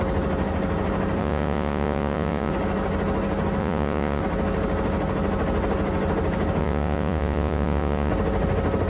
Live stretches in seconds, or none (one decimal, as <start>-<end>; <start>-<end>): 0.0-1.2; 2.5-3.6; 4.2-6.6; 8.1-8.9